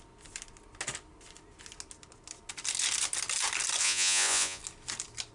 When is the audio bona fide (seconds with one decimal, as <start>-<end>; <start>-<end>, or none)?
0.0-3.8; 4.6-5.3